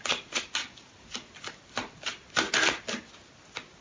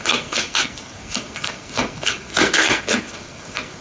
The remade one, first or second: second